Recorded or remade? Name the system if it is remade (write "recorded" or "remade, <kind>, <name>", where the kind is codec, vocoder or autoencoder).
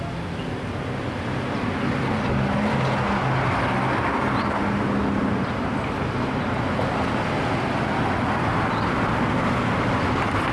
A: recorded